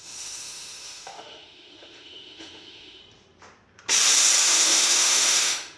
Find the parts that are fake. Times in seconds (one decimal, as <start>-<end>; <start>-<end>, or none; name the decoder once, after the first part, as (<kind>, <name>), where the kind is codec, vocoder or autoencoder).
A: 0.0-3.0 (autoencoder, DAC-VAE); 4.4-5.8